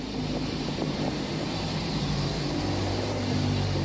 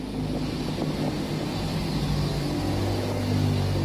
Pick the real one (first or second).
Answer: second